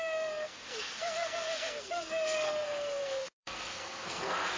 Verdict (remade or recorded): remade